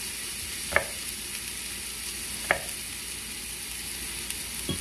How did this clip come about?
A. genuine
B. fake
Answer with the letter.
A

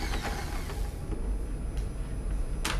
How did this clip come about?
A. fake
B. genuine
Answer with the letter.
B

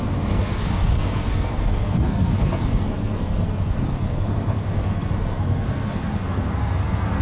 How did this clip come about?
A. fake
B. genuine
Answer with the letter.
A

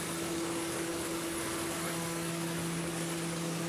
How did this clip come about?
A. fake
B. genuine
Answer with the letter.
A